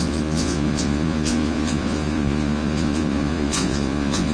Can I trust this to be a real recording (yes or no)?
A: no